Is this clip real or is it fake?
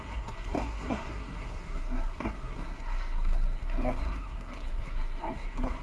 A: fake